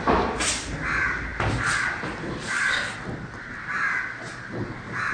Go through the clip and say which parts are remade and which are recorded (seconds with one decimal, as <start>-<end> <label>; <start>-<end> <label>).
0.0-5.1 recorded